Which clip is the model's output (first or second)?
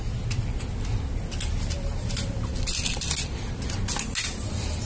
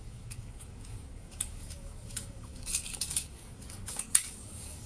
second